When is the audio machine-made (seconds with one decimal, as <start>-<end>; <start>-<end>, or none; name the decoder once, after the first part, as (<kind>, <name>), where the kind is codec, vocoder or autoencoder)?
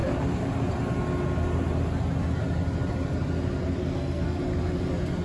3.8-4.4 (codec, SNAC)